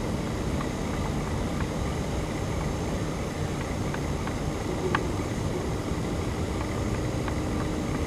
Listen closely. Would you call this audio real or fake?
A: real